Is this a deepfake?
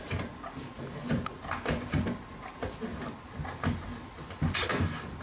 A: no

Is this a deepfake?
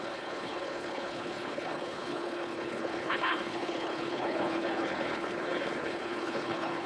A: yes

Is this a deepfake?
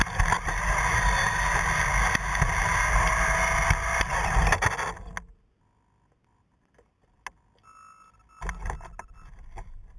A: no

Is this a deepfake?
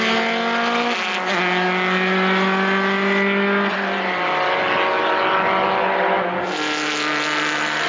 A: no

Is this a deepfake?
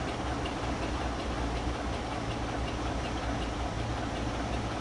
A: no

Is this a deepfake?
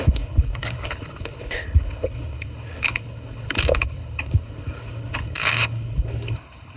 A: yes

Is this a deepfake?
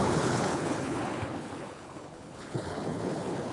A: yes